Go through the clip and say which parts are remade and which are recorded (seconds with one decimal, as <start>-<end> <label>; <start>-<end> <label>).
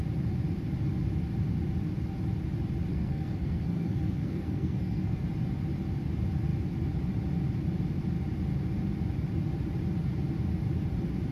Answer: 0.0-2.9 recorded; 2.9-5.2 remade; 5.2-11.3 recorded